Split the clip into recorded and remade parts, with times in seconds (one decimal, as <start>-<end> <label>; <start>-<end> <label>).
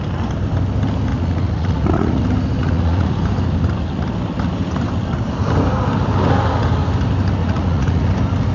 0.0-1.1 recorded; 1.1-2.2 remade; 2.2-2.6 recorded; 2.6-3.2 remade; 3.2-7.4 recorded; 7.4-8.1 remade; 8.1-8.5 recorded